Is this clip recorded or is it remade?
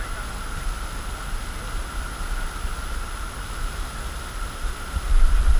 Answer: recorded